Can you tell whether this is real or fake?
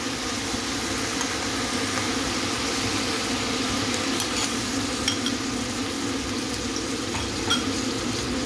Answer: real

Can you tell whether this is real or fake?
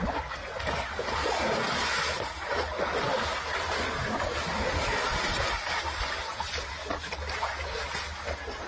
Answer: real